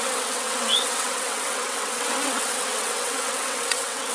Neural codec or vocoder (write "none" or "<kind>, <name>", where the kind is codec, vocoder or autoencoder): vocoder, WaveNeXt